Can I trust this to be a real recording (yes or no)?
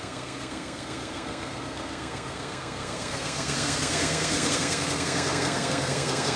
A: no